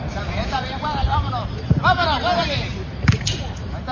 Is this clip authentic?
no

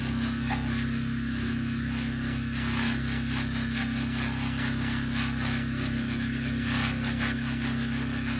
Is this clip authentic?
no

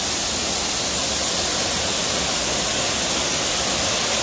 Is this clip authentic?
yes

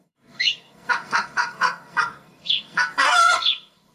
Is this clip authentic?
no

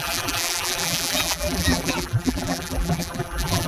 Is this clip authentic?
no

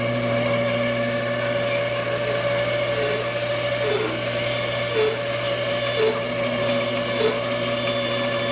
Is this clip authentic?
yes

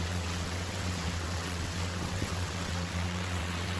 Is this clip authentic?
no